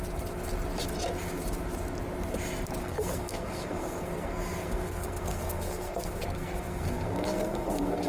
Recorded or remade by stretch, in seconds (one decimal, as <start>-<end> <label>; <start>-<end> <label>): 0.0-2.8 recorded; 2.8-8.1 remade